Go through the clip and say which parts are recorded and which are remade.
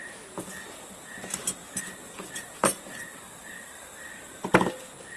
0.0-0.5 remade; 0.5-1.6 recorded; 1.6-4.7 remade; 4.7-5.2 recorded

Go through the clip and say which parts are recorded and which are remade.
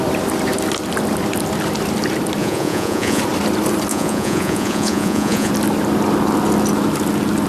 0.0-2.4 recorded; 2.4-3.2 remade; 3.2-3.9 recorded; 3.9-5.5 remade; 5.5-7.5 recorded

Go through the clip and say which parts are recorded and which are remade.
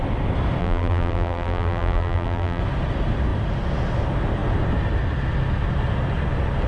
0.0-0.6 recorded; 0.6-2.6 remade; 2.6-6.7 recorded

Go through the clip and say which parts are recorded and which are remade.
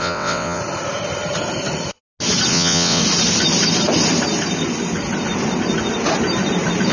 0.0-0.6 remade; 0.6-2.5 recorded; 2.5-3.0 remade; 3.0-6.9 recorded